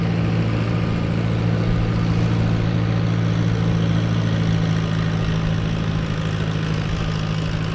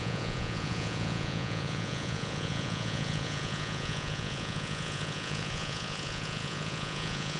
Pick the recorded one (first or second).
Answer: first